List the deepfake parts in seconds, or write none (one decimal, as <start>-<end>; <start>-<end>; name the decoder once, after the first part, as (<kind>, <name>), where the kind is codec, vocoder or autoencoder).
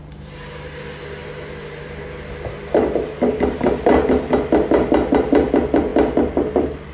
none